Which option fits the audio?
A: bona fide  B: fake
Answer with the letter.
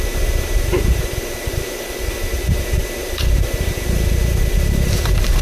B